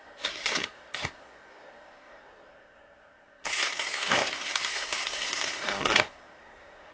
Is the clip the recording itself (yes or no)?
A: no